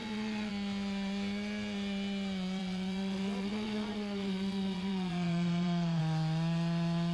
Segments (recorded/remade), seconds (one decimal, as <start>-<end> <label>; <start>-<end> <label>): 0.0-0.5 remade; 0.5-2.6 recorded; 2.6-6.0 remade; 6.0-7.1 recorded